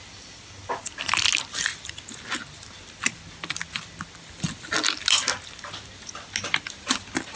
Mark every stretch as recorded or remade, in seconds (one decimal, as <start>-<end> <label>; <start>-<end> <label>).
0.0-7.4 recorded